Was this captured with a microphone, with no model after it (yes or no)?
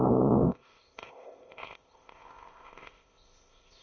no